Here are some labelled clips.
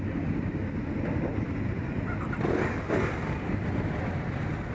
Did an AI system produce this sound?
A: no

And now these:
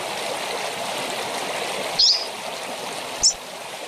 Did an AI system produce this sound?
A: no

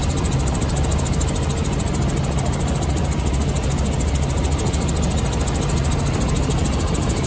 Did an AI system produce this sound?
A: no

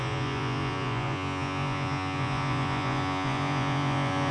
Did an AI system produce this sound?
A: yes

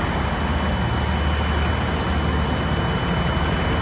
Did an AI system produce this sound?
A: no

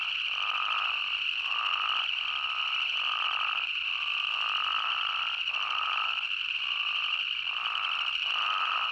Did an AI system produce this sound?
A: no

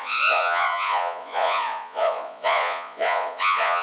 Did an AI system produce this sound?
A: yes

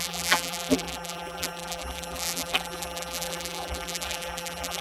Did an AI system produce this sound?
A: yes